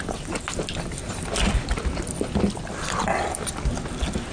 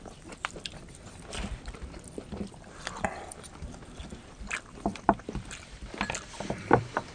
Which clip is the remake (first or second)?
second